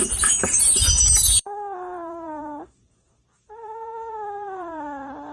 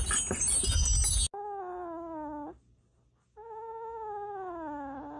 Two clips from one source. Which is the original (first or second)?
second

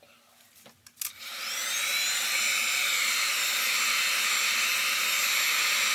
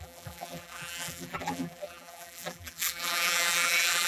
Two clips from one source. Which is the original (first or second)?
first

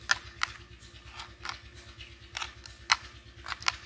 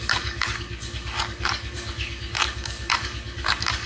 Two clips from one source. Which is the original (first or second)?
first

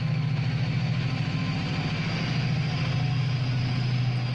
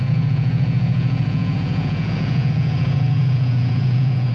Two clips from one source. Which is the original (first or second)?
first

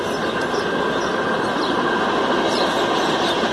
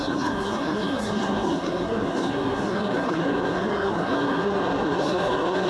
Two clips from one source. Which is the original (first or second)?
first